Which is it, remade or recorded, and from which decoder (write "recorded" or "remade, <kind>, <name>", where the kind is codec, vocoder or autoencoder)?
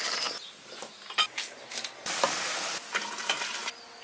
recorded